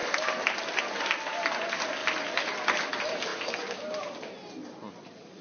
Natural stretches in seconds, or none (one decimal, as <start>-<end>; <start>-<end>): 0.0-5.4